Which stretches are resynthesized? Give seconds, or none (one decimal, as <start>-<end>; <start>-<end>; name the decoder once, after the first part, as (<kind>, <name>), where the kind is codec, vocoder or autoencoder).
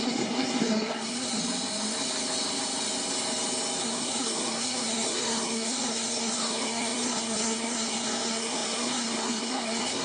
0.0-1.4 (codec, SNAC); 3.8-10.0